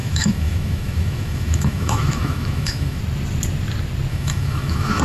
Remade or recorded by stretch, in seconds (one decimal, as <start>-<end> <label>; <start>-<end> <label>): 0.0-3.0 remade; 3.0-4.1 recorded; 4.1-5.0 remade